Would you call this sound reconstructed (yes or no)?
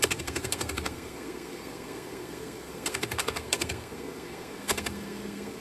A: yes